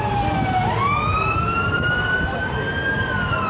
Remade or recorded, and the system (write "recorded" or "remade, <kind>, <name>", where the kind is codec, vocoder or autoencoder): recorded